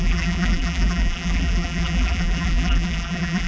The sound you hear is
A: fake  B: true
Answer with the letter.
A